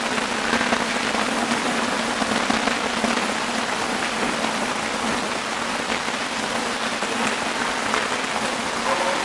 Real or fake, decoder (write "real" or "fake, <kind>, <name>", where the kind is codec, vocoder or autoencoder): real